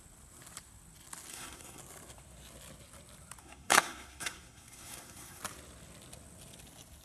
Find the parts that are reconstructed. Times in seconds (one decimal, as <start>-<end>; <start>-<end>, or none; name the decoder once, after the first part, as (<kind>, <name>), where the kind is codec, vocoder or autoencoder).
1.3-1.8 (codec, SNAC); 3.4-5.4